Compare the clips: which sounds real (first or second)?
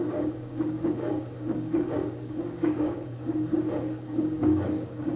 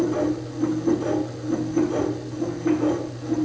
second